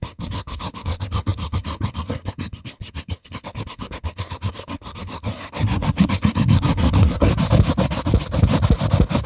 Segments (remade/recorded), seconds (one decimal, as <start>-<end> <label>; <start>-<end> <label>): 0.0-7.3 remade; 7.3-9.3 recorded